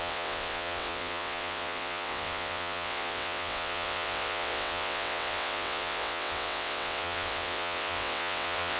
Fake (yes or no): yes